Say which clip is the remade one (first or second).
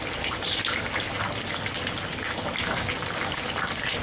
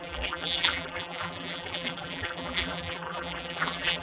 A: second